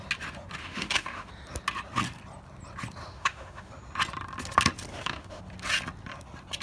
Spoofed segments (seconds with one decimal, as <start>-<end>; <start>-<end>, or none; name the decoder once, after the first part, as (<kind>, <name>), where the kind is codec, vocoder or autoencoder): 0.6-1.3 (autoencoder, DAC-VAE); 3.0-3.7; 4.9-5.4

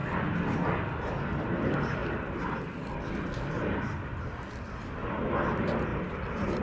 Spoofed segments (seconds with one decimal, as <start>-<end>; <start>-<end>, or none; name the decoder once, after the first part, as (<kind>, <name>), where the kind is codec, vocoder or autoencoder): none

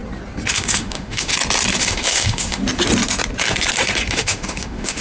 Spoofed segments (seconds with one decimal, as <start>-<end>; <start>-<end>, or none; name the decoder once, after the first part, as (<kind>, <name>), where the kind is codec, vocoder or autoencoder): 0.5-1.3 (autoencoder, DAC-VAE); 1.8-2.6; 4.1-5.0

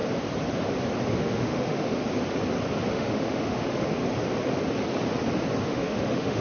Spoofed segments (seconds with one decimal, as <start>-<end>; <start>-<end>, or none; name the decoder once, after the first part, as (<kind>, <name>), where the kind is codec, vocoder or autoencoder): 1.2-2.0 (autoencoder, DAC-VAE); 2.9-4.0; 5.6-6.4

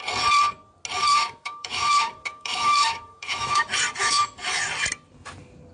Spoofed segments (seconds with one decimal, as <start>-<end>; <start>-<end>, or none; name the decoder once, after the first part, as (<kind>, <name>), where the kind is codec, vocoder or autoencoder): 1.1-3.6 (autoencoder, DAC-VAE); 4.0-4.6

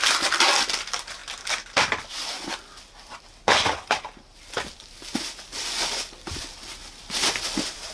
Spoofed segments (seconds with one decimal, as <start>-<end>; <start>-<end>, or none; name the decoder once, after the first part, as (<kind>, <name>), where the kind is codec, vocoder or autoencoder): none

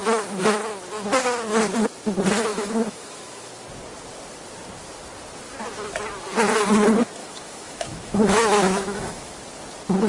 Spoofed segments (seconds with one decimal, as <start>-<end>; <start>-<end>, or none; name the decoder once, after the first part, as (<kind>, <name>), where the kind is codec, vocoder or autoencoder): 0.0-0.6 (autoencoder, DAC-VAE); 2.5-3.5; 7.2-9.3

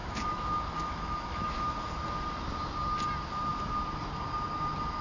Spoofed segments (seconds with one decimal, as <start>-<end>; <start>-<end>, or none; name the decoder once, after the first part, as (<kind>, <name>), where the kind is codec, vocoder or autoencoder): 0.0-1.9 (autoencoder, DAC-VAE)